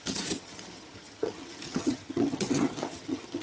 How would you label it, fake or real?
fake